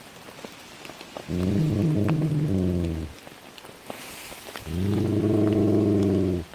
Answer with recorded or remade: recorded